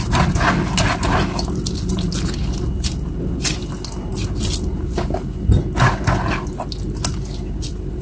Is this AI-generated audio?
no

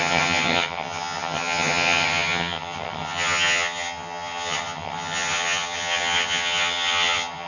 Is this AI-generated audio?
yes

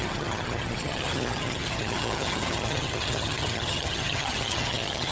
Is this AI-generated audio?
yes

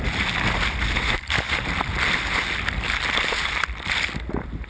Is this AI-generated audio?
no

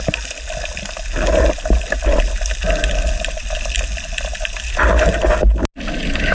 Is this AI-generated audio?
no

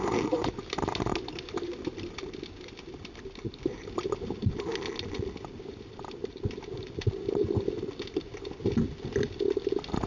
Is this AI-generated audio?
no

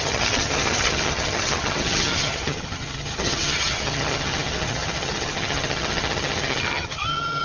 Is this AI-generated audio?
yes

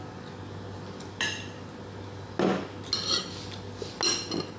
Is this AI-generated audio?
no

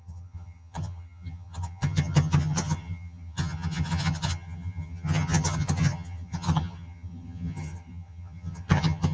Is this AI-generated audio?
yes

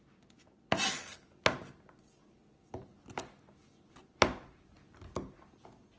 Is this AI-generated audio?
no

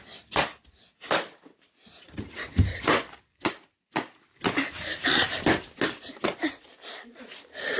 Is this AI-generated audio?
no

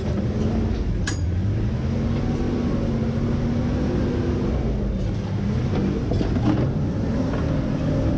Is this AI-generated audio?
no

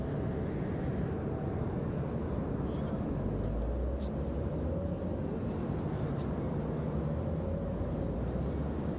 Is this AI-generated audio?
no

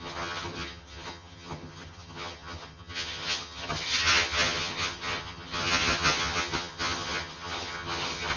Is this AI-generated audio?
yes